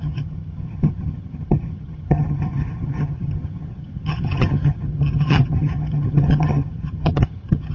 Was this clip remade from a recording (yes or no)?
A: yes